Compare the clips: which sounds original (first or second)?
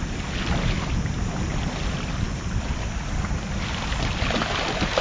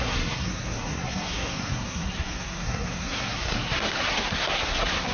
first